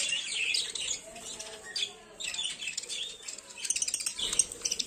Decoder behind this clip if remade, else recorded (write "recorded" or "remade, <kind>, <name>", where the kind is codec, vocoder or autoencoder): recorded